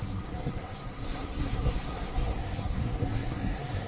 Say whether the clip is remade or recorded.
remade